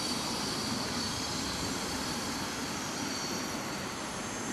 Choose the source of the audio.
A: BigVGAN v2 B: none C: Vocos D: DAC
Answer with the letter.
A